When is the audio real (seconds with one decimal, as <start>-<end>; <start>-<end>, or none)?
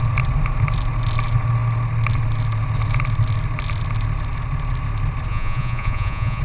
0.0-5.3